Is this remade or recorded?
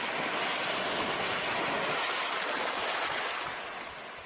recorded